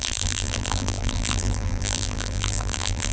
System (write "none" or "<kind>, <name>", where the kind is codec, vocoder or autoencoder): vocoder, BigVGAN v2